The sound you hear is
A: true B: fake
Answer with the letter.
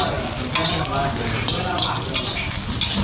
A